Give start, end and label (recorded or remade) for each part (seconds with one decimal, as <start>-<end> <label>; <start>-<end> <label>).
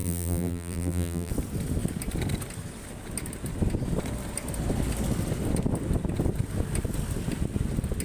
0.0-1.3 remade; 1.3-8.0 recorded